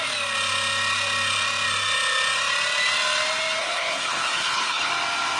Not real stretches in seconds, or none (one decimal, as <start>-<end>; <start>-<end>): 3.6-4.9